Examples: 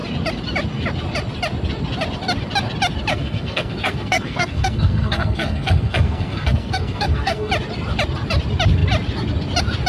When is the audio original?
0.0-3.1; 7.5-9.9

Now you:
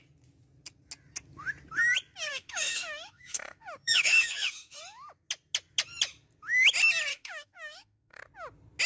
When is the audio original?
0.0-2.3; 4.8-7.1; 8.2-8.9

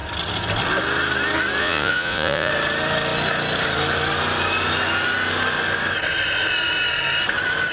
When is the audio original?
0.0-1.6; 2.5-7.7

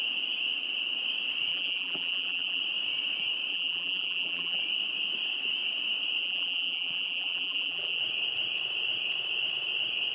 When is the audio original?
0.0-1.5; 2.6-3.5; 4.6-6.2; 8.0-10.1

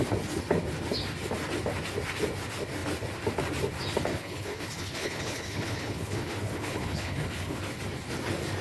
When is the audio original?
0.0-4.1; 7.6-8.6

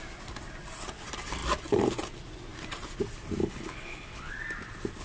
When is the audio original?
0.0-3.4; 4.3-5.0

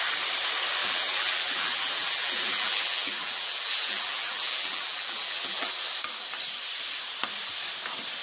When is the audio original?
0.0-0.8; 5.7-8.2

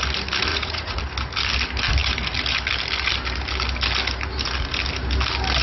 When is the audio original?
0.0-0.5; 1.0-5.6